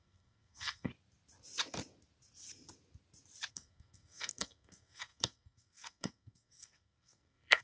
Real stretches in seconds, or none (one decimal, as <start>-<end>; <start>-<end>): 0.9-3.5